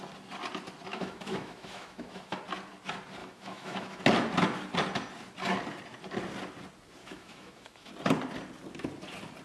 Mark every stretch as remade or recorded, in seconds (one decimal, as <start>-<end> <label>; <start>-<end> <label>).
0.0-0.9 recorded; 0.9-2.4 remade; 2.4-3.2 recorded; 3.2-4.0 remade; 4.0-7.0 recorded; 7.0-7.9 remade; 7.9-9.4 recorded